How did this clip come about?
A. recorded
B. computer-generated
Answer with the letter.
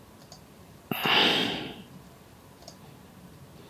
A